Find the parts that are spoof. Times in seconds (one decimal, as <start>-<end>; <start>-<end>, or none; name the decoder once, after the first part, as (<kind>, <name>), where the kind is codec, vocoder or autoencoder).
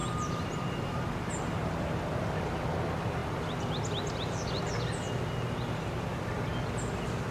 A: 0.0-2.1 (vocoder, BigVGAN v2)